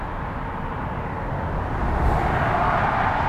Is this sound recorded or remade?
recorded